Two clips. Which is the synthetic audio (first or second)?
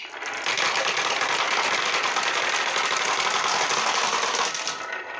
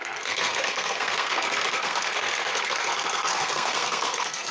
second